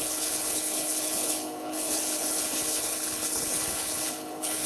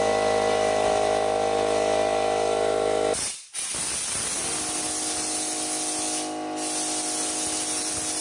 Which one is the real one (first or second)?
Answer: second